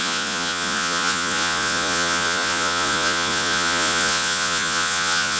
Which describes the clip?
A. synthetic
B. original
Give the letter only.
A